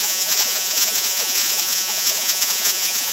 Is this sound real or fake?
fake